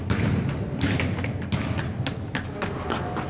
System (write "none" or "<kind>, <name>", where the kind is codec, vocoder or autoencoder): none